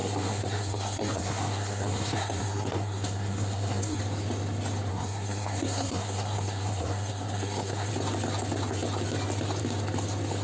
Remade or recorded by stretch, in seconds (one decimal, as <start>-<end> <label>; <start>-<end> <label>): 0.0-4.0 remade; 4.0-4.9 recorded; 4.9-7.9 remade; 7.9-10.4 recorded